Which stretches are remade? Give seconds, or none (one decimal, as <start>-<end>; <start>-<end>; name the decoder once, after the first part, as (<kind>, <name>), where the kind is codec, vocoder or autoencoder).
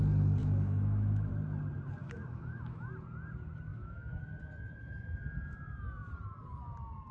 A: 0.4-1.3 (autoencoder, DAC-VAE); 2.0-2.9; 3.7-4.2